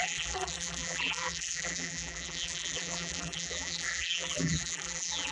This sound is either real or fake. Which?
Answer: fake